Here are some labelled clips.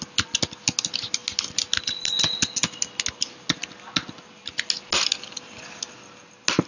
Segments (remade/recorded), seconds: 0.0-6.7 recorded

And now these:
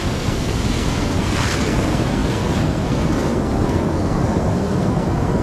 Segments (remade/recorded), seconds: 0.0-5.4 remade

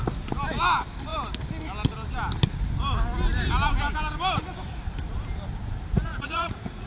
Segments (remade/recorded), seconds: 0.0-5.9 recorded; 5.9-6.9 remade

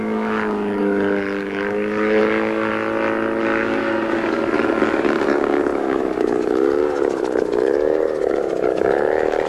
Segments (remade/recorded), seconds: 0.0-2.7 remade; 2.7-3.4 recorded; 3.4-9.5 remade

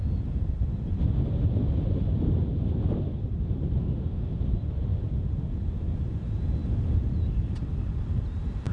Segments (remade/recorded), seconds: 0.0-3.8 recorded; 3.8-4.4 remade; 4.4-8.7 recorded

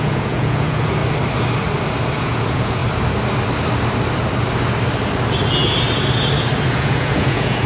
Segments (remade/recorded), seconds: 0.0-1.0 remade; 1.0-2.2 recorded; 2.2-2.8 remade; 2.8-6.7 recorded; 6.7-7.7 remade